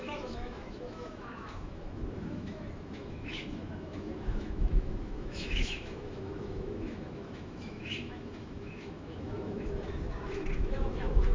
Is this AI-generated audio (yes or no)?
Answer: yes